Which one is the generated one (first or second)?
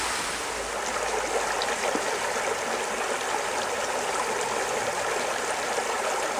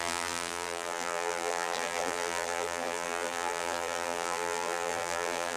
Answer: second